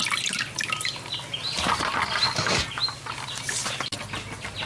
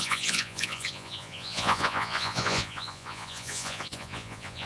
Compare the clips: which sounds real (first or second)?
first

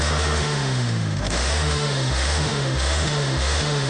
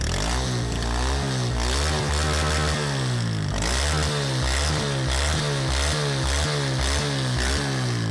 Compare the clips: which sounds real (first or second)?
second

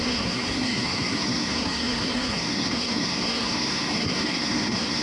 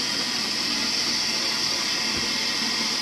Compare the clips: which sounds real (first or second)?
second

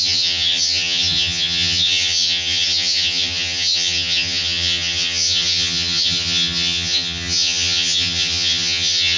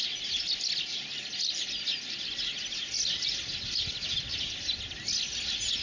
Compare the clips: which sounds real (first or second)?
second